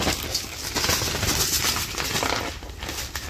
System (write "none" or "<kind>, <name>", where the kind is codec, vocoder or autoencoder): none